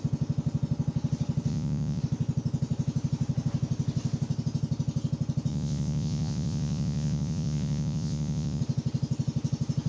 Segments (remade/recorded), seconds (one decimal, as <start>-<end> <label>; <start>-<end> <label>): 0.0-1.5 recorded; 1.5-2.0 remade; 2.0-5.5 recorded; 5.5-8.6 remade; 8.6-9.9 recorded